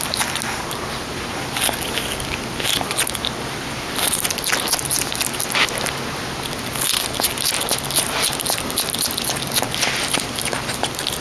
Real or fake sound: real